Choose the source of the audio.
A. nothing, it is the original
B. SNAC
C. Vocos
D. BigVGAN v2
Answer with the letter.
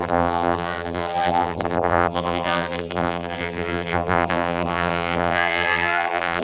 D